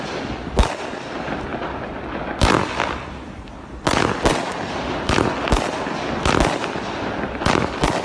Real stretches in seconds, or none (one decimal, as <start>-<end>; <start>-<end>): 0.0-8.0